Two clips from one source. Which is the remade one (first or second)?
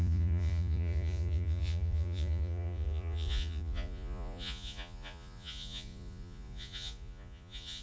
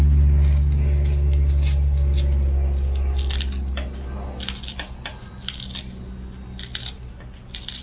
first